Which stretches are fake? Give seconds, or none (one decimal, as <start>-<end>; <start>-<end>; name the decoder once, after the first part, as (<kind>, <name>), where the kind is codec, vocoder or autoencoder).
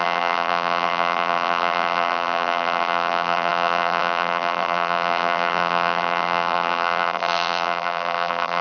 0.0-8.6 (vocoder, BigVGAN v2)